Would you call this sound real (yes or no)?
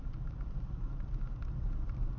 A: yes